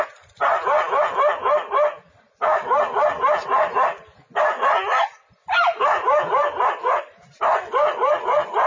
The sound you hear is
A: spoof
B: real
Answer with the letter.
B